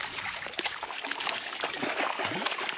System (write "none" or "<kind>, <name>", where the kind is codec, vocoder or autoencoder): codec, DAC